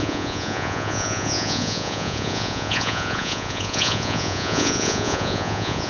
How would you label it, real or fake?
fake